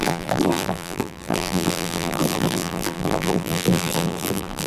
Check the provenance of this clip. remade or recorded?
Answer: remade